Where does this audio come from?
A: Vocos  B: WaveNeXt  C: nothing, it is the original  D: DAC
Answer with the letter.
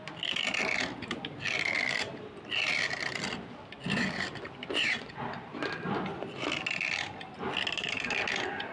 C